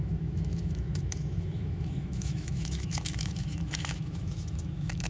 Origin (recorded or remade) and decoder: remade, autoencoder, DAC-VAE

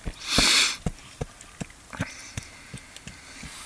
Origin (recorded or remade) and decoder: recorded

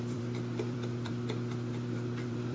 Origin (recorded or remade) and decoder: remade, vocoder, BigVGAN v2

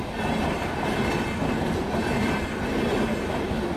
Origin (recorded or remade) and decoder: recorded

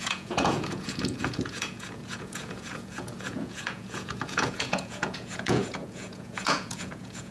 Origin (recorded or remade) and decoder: remade, vocoder, Vocos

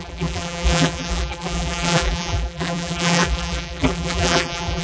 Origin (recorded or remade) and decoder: remade, vocoder, BigVGAN v2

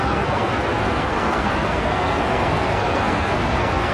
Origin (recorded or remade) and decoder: remade, codec, SNAC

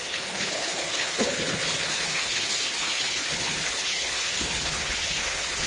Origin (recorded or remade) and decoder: remade, codec, HILCodec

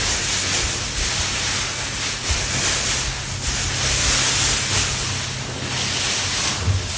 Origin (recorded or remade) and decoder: recorded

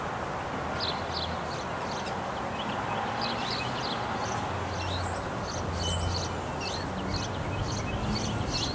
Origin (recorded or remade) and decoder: recorded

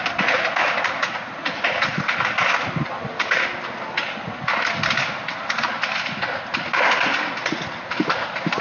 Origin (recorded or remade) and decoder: recorded